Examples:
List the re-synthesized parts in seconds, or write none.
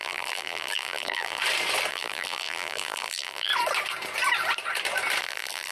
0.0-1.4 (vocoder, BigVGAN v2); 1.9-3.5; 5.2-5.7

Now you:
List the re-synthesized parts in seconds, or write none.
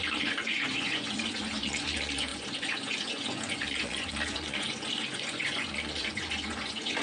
0.0-7.0 (vocoder, Vocos)